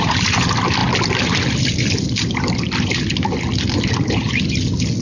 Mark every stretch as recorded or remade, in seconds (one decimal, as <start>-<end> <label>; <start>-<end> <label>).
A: 0.0-0.8 recorded; 0.8-2.8 remade; 2.8-5.0 recorded